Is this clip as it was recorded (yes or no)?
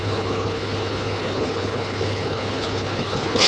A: no